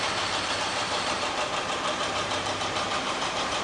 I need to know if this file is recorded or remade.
remade